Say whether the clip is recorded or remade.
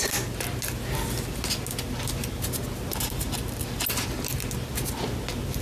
recorded